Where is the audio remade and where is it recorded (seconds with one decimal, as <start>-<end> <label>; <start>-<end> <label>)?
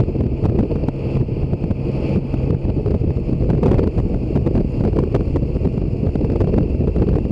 0.0-7.3 recorded